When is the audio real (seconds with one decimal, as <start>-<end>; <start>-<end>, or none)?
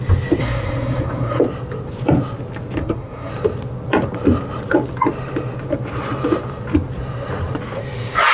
0.0-0.4; 1.4-2.8; 3.3-8.3